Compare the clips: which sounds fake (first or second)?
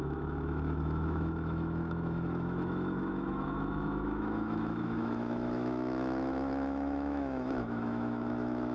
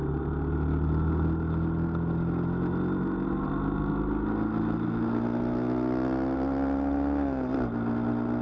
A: first